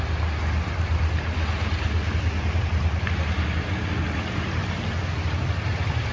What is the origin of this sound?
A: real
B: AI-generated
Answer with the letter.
A